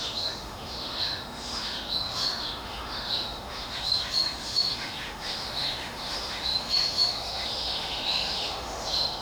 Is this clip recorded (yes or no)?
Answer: no